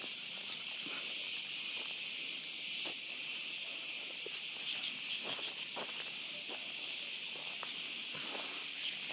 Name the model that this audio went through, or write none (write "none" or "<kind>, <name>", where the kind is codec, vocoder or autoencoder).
vocoder, BigVGAN v2